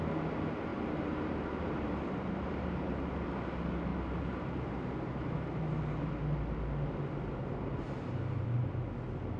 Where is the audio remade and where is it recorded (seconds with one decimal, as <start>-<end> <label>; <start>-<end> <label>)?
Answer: 0.0-0.7 recorded; 0.7-3.3 remade; 3.3-3.9 recorded; 3.9-6.1 remade; 6.1-7.4 recorded; 7.4-8.7 remade; 8.7-9.4 recorded

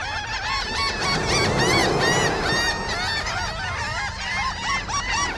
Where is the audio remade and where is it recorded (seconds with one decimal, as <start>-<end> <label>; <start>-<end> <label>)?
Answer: 0.0-5.4 recorded

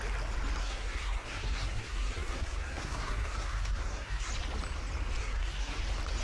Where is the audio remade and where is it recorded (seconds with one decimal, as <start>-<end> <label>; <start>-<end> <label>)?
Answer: 0.0-0.6 recorded; 0.6-4.3 remade; 4.3-5.2 recorded; 5.2-5.8 remade; 5.8-6.2 recorded

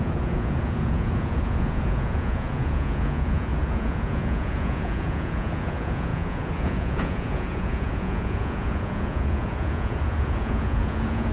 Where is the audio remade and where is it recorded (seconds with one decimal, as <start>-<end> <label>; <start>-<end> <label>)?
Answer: 0.0-11.3 remade

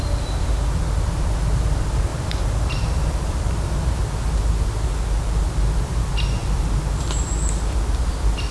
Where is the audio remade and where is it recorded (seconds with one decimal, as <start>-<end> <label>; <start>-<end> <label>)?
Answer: 0.0-2.1 recorded; 2.1-4.0 remade; 4.0-6.4 recorded; 6.4-7.3 remade; 7.3-8.5 recorded